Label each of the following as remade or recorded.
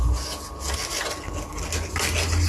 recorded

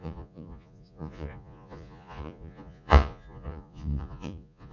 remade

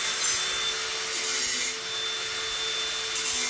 recorded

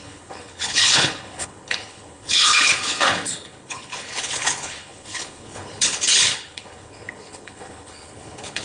remade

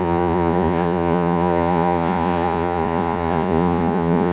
remade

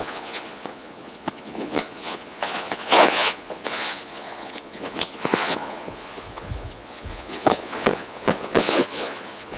remade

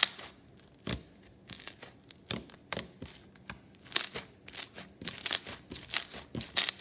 recorded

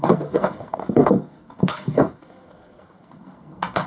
remade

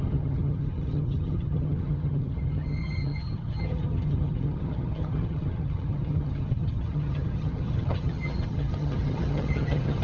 remade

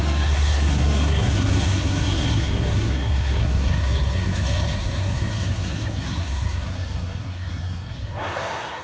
remade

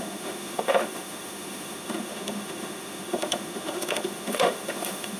remade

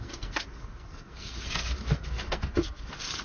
remade